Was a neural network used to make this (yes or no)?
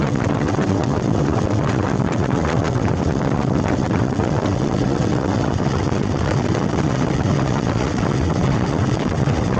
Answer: yes